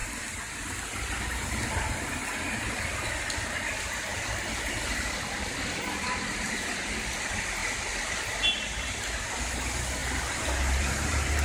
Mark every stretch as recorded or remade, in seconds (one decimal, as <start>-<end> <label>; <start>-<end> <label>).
0.0-10.0 recorded; 10.0-11.4 remade